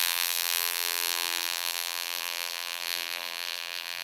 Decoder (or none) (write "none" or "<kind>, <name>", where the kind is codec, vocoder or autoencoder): vocoder, BigVGAN v2